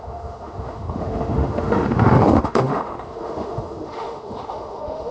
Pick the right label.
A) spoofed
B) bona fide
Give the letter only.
A